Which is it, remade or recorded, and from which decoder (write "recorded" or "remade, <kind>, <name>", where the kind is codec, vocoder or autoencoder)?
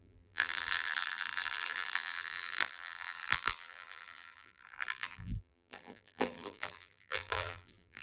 remade, vocoder, BigVGAN v2